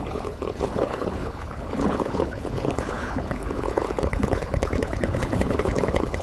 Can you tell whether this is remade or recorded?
remade